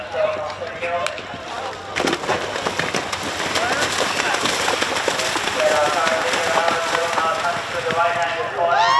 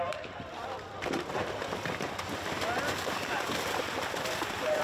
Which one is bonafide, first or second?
first